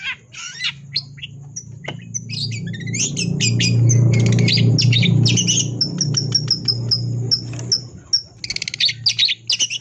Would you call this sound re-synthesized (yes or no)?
no